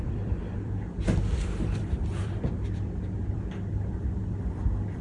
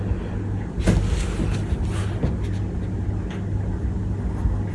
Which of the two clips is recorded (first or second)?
second